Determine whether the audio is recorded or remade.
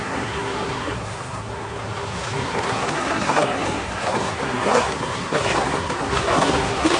remade